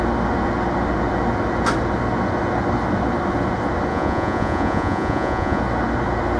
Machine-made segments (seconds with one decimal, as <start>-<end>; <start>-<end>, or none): 3.9-5.6